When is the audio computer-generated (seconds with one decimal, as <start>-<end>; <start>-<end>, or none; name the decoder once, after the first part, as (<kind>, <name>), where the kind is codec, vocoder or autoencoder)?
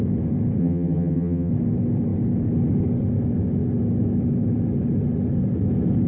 0.6-1.5 (vocoder, HiFi-GAN)